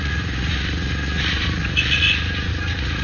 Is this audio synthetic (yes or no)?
yes